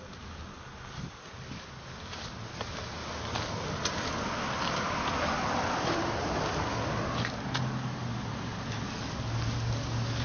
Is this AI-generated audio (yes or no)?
no